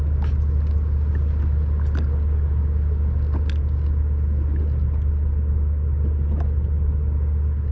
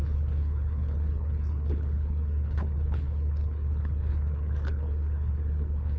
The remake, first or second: second